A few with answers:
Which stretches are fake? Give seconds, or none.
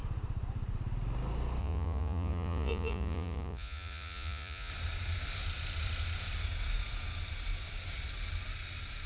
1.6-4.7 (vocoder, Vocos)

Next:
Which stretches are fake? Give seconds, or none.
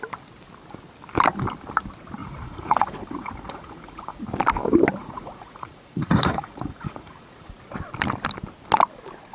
2.2-4.2 (vocoder, Vocos); 5.0-7.5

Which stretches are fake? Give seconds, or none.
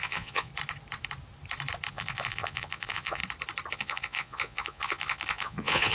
0.0-0.5 (vocoder, Vocos); 1.9-3.2; 3.7-5.9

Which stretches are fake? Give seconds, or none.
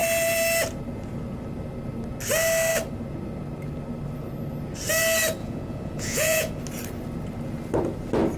5.4-6.6 (vocoder, Vocos)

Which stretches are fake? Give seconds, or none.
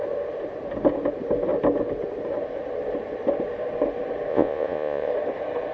4.3-5.1 (vocoder, Vocos)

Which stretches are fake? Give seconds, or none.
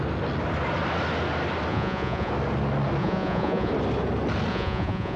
1.7-2.3 (vocoder, Vocos); 3.0-3.7; 4.5-5.2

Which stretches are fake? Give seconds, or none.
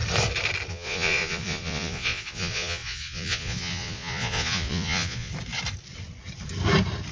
0.7-5.3 (vocoder, Vocos)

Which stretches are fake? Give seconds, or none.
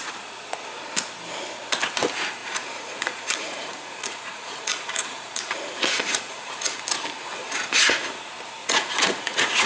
2.4-6.8 (vocoder, Vocos); 7.4-8.1; 8.6-9.7